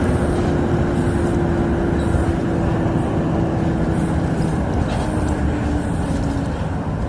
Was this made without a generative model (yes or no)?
yes